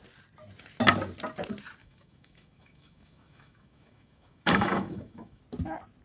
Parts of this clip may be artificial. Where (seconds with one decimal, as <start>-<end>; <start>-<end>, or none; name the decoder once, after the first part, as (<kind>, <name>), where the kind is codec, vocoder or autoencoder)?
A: 1.8-5.4 (autoencoder, DAC-VAE)